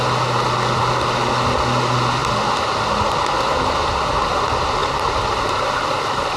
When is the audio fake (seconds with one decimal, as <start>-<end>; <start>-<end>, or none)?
4.8-6.4